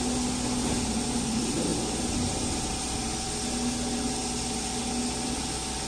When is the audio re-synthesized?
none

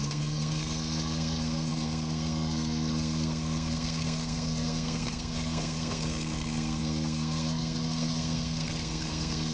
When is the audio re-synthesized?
0.0-9.5 (codec, SNAC)

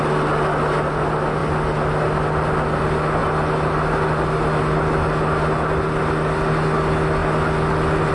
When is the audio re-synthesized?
none

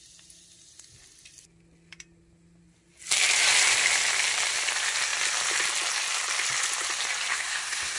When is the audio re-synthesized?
7.3-8.0 (codec, SNAC)

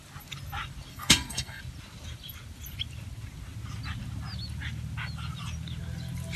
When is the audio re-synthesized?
0.9-1.6 (codec, SNAC)

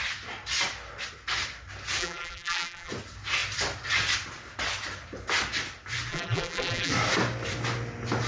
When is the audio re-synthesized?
2.0-2.9 (vocoder, BigVGAN v2); 6.1-6.9

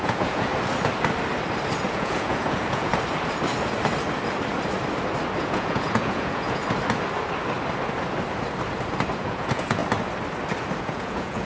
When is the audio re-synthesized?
0.0-0.5 (vocoder, Vocos); 1.9-2.9; 5.4-6.6; 9.2-9.8; 10.8-11.4